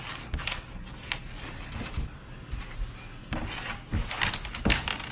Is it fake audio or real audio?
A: real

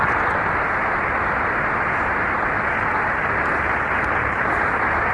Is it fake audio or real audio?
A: real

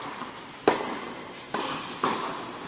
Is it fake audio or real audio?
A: real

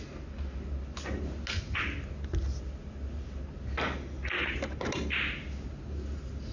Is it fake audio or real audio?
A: real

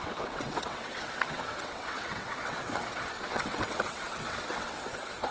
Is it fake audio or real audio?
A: fake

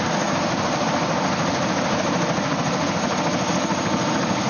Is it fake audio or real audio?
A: real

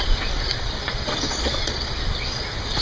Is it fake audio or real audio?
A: fake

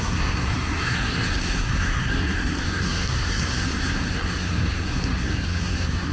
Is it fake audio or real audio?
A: fake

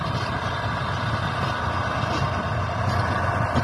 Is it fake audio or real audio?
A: real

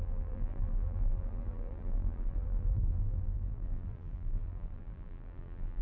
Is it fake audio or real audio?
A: fake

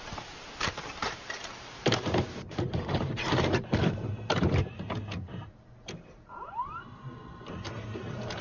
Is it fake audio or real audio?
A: fake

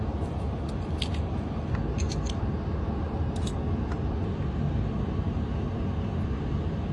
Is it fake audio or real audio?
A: real